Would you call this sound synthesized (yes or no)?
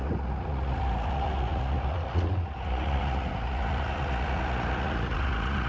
yes